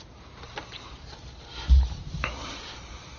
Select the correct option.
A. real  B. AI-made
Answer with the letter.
B